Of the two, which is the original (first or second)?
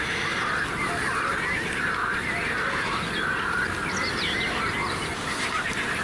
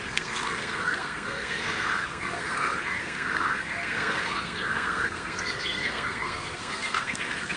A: first